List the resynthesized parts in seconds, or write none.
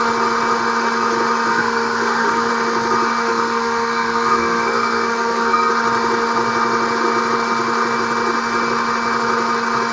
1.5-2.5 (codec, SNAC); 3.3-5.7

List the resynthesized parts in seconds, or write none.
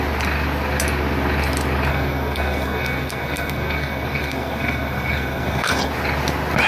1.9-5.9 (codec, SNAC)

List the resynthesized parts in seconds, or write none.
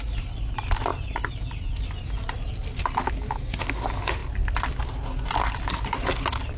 none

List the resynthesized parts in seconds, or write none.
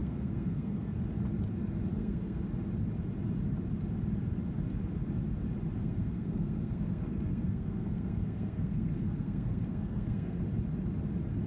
0.0-1.0 (codec, SNAC); 2.0-2.5; 5.8-10.4